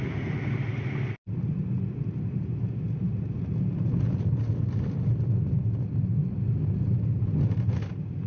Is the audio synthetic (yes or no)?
no